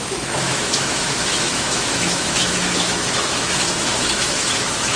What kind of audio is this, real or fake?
fake